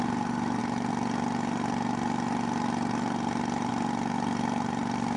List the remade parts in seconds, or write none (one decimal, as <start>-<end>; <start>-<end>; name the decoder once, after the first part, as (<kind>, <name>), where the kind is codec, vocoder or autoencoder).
none